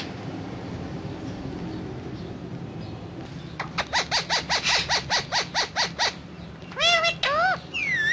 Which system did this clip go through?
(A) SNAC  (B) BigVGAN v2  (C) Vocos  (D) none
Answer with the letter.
D